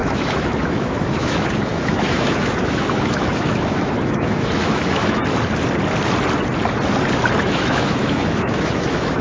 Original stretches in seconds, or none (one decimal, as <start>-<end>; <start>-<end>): 5.2-7.4